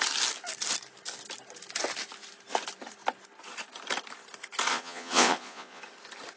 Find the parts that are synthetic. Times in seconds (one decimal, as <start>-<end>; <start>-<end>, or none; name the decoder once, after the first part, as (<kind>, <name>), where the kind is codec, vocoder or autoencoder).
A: 4.7-5.8 (vocoder, Vocos)